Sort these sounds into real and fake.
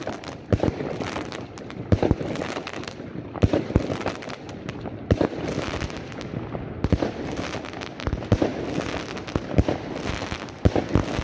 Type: real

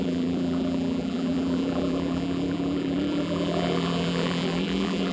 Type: fake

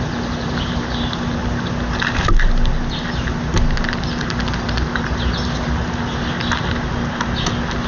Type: real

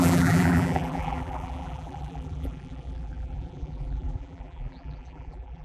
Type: fake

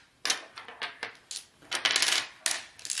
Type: real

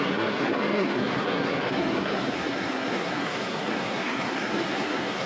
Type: fake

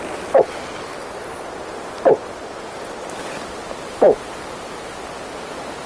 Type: real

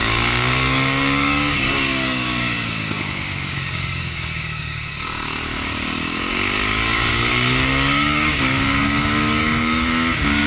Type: fake